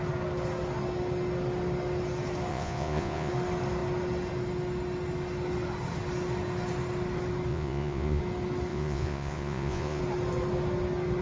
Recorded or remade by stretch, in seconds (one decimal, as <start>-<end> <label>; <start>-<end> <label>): 0.0-2.5 recorded; 2.5-3.3 remade; 3.3-7.5 recorded; 7.5-8.2 remade; 8.2-8.7 recorded; 8.7-10.0 remade; 10.0-11.2 recorded